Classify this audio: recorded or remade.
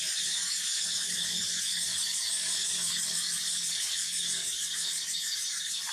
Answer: remade